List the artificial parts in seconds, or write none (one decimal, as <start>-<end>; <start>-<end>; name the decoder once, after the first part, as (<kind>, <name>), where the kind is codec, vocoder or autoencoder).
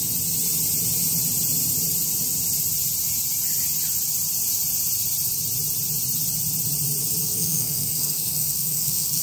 7.2-9.2 (codec, SNAC)